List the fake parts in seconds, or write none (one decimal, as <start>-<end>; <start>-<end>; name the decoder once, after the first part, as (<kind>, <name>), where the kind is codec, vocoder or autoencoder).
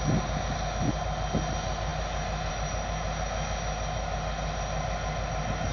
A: none